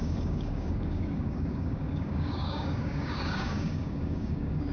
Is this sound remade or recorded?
remade